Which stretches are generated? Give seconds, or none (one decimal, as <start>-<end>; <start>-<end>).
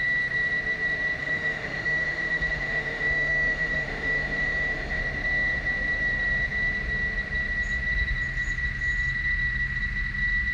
1.2-5.0